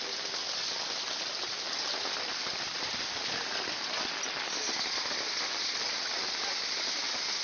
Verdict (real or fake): real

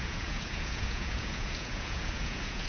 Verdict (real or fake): fake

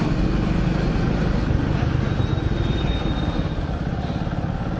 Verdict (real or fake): real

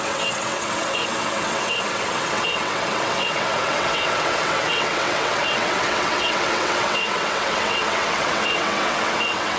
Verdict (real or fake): fake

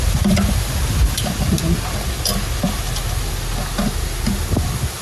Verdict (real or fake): real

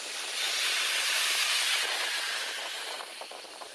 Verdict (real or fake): real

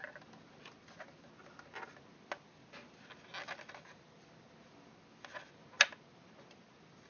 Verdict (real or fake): real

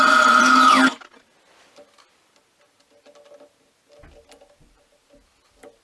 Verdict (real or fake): real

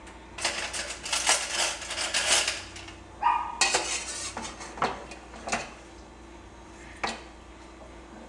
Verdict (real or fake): real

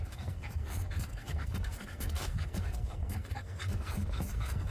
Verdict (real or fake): fake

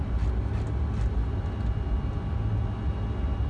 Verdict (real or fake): real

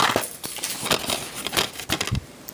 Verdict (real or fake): real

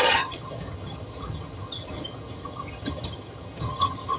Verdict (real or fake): fake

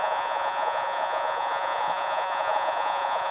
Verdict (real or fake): fake